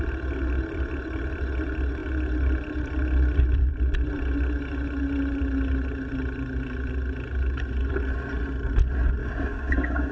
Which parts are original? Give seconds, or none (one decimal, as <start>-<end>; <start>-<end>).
0.0-9.2